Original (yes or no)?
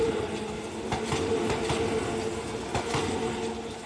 yes